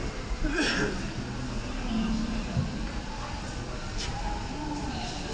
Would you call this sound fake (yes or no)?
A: no